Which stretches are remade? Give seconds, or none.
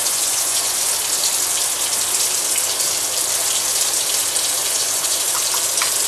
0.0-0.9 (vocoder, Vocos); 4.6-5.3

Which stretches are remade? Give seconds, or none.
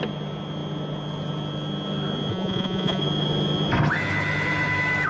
2.3-3.0 (vocoder, Vocos)